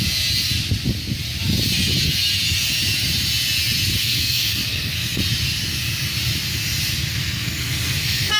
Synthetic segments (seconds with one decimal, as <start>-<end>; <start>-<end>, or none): 4.0-5.2; 7.2-8.4